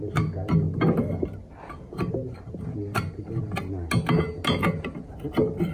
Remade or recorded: recorded